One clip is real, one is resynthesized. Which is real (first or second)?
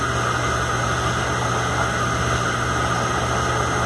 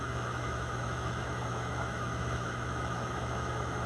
first